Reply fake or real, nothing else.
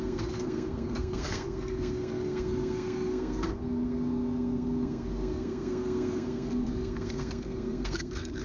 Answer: fake